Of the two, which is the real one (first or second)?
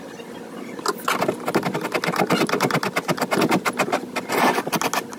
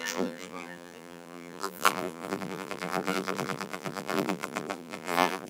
first